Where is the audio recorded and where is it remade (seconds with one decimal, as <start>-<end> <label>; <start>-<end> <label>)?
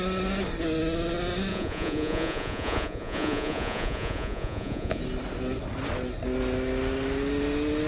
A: 0.0-1.5 recorded; 1.5-5.0 remade; 5.0-7.9 recorded